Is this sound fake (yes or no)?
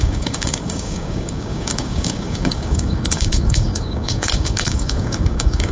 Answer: yes